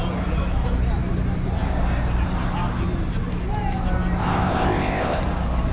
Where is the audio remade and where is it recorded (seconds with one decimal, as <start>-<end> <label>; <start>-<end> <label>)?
0.0-4.2 recorded; 4.2-5.2 remade; 5.2-5.7 recorded